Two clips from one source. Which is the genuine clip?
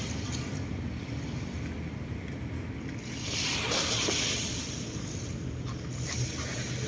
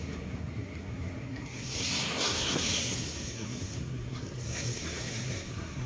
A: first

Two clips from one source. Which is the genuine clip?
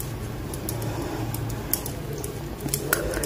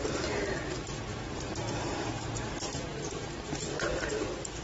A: first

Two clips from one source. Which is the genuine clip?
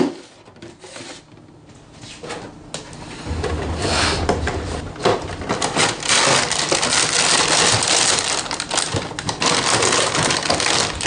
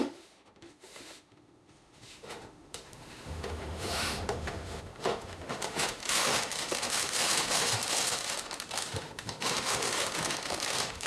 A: first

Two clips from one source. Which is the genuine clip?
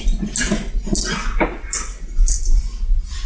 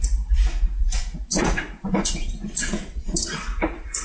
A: first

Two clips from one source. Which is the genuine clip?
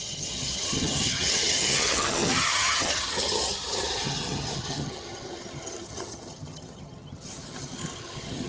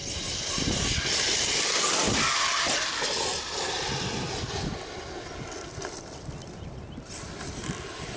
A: second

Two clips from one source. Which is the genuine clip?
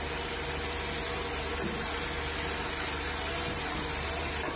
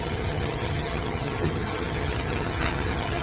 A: first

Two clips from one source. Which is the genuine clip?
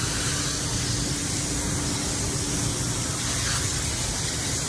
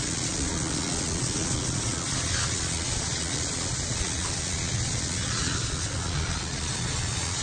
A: first